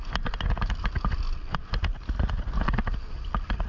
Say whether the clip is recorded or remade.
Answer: recorded